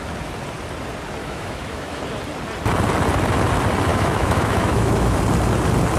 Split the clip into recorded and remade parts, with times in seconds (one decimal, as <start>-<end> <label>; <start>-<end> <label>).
0.0-1.2 recorded; 1.2-2.0 remade; 2.0-3.9 recorded; 3.9-5.2 remade; 5.2-6.0 recorded